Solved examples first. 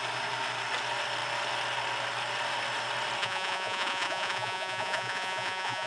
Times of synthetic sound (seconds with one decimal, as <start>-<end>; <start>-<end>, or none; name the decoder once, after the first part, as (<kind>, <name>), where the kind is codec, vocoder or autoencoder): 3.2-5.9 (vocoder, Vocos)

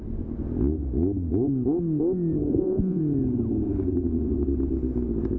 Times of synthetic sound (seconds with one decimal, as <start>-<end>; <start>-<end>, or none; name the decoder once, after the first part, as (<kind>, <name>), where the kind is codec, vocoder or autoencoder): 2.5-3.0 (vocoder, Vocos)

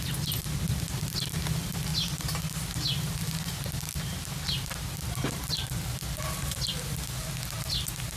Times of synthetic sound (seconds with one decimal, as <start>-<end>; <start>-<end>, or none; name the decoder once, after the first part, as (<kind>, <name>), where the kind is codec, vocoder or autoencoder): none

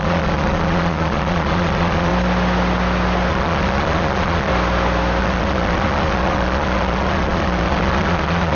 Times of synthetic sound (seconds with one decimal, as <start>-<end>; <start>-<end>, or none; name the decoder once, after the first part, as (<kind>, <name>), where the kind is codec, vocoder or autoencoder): 0.0-2.1 (vocoder, Vocos); 3.3-4.5; 5.2-8.6

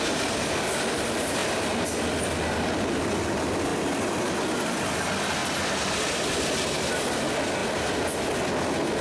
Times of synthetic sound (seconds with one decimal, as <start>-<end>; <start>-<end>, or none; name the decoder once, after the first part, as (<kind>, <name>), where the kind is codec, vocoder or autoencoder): none

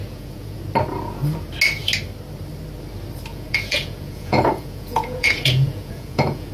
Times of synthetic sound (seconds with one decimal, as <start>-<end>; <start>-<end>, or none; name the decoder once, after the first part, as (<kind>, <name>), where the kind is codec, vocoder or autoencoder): 0.0-0.6 (vocoder, Vocos); 3.3-6.5

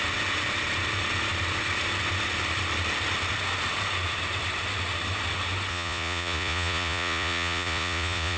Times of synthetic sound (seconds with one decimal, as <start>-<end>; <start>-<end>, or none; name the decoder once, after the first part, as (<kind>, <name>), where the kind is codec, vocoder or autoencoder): 5.7-8.4 (vocoder, Vocos)